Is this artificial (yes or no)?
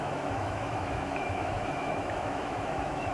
yes